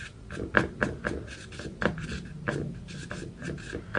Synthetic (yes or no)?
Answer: no